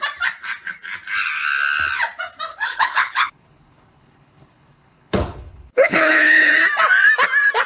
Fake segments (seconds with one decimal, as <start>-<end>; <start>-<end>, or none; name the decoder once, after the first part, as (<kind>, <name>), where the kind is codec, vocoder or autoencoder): 2.5-6.5 (codec, HILCodec)